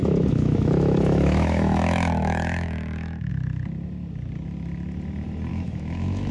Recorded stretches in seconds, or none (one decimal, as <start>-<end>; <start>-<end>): 3.3-5.5